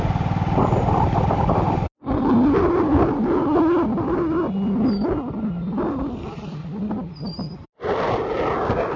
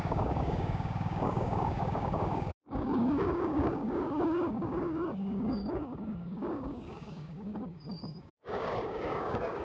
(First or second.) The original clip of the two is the first